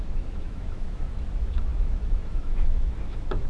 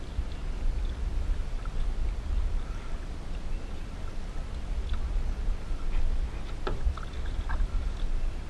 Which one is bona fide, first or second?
second